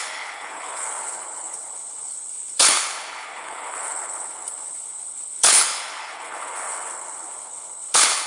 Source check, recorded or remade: remade